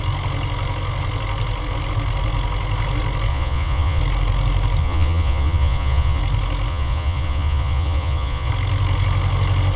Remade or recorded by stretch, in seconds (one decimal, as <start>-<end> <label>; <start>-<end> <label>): 0.0-3.3 recorded; 3.3-4.0 remade; 4.0-4.8 recorded; 4.8-6.2 remade; 6.2-6.7 recorded; 6.7-8.5 remade; 8.5-9.8 recorded